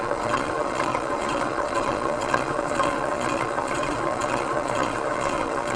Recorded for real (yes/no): no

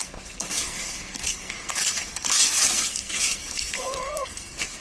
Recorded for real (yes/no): no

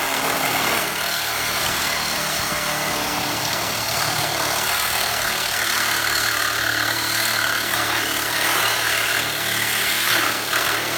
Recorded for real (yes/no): no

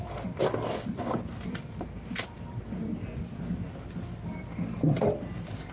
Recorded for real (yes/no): no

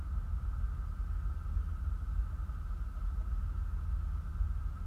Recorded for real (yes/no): yes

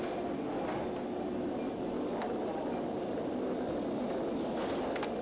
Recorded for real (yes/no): yes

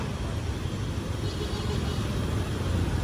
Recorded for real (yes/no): yes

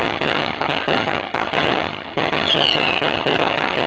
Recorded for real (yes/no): no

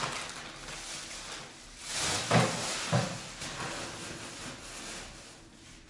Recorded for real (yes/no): yes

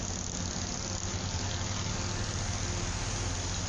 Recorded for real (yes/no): yes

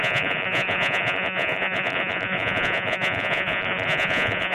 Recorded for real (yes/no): no